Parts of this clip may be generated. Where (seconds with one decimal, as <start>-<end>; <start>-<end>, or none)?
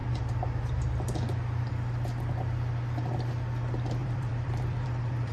4.0-5.3